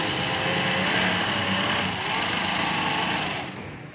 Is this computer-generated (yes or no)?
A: no